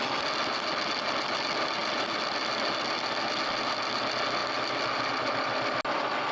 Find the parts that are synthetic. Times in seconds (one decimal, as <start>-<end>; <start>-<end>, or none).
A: none